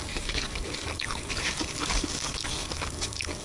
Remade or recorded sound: remade